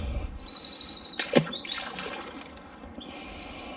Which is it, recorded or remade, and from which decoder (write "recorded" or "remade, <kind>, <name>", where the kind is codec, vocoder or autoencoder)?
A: remade, vocoder, BigVGAN v2